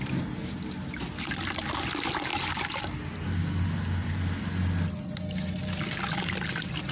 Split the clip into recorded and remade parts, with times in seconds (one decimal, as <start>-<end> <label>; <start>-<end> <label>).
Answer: 0.0-6.9 recorded